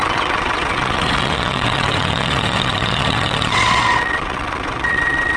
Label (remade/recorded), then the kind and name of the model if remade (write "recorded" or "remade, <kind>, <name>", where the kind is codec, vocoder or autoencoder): remade, vocoder, WaveNeXt